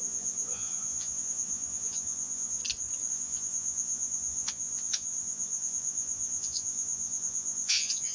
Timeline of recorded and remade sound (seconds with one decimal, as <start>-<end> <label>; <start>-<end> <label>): 0.0-2.6 remade; 2.6-3.1 recorded; 3.1-8.1 remade